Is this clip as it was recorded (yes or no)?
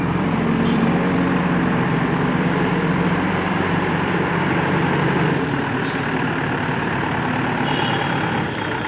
no